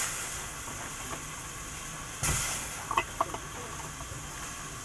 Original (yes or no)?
yes